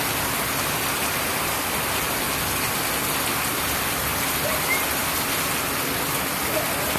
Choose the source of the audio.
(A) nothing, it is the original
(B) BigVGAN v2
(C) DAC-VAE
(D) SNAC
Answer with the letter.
A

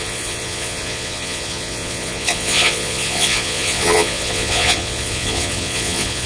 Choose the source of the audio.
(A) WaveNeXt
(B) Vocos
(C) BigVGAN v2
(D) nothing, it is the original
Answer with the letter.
B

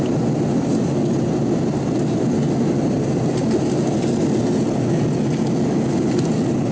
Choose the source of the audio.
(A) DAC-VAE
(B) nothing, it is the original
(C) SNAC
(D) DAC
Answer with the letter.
B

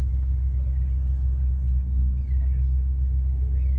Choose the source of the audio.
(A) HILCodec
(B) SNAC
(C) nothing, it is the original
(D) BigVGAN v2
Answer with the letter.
C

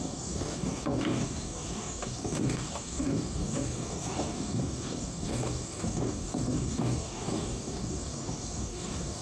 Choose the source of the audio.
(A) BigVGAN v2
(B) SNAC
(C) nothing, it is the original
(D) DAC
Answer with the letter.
D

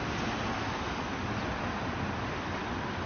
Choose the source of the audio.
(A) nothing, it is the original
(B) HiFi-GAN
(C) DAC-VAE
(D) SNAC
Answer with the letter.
A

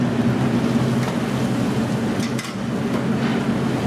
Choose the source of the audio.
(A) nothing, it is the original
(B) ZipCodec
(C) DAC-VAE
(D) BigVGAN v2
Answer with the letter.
A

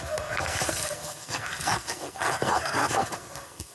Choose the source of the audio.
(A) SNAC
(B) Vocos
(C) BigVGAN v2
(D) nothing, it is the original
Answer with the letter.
A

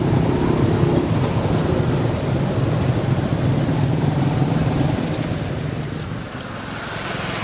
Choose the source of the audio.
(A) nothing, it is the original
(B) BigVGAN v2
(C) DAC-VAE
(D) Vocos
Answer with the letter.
A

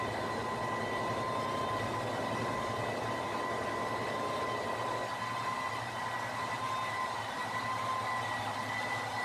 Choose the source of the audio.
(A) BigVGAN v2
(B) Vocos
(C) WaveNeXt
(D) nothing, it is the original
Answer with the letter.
D